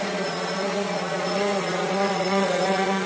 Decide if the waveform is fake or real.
fake